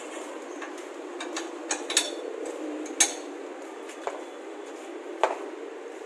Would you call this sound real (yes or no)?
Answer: yes